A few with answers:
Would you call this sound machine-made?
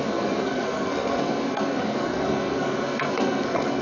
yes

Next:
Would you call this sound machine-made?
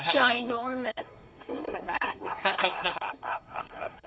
yes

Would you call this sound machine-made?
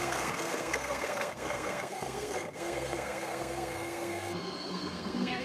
yes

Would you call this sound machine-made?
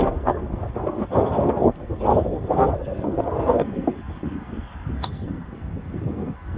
yes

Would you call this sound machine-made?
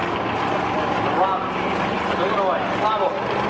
no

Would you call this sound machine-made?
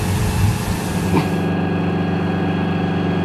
no